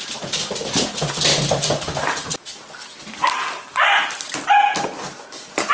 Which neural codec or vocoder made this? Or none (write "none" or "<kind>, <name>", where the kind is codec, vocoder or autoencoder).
none